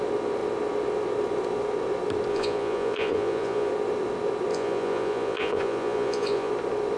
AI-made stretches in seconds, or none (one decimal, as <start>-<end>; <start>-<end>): 2.3-3.7; 4.5-6.5